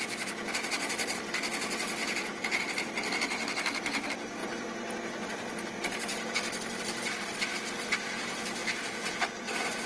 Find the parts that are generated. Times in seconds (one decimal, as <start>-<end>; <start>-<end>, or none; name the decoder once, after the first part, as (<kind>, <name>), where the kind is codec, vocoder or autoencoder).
2.0-2.6 (vocoder, Vocos); 8.6-9.3